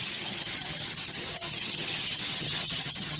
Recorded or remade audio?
remade